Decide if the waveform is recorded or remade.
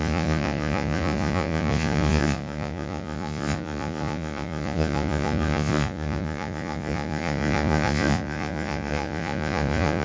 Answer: remade